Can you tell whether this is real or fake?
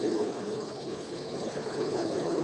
fake